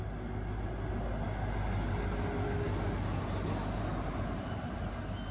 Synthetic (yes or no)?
no